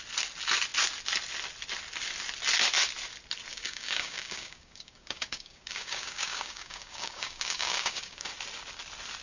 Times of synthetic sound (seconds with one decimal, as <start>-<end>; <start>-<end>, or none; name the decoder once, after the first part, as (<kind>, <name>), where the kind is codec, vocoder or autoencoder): 3.5-8.3 (codec, DAC)